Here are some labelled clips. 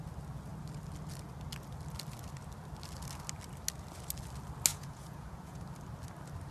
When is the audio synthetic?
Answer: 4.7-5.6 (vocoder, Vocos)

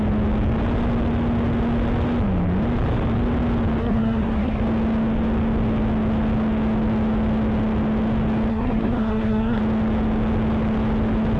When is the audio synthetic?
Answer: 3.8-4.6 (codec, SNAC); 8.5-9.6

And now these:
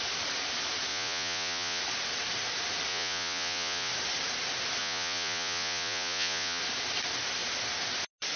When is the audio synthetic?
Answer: 0.9-1.8 (vocoder, Vocos); 2.9-3.9; 4.8-6.6

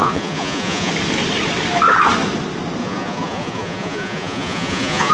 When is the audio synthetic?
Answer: 0.0-0.9 (vocoder, Vocos); 2.8-5.1

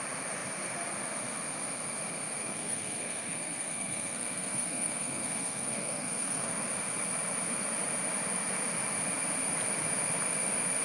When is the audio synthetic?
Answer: 2.4-6.7 (codec, SNAC)

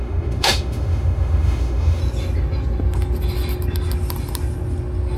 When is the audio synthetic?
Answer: 0.0-2.0 (autoencoder, DAC-VAE)